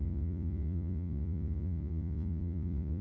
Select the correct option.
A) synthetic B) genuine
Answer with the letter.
A